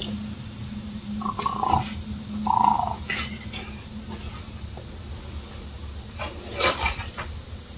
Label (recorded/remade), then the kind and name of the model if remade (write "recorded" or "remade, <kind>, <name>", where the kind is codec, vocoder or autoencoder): recorded